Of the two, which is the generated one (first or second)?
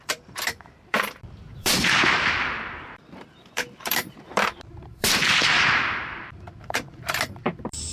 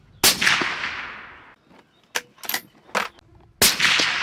first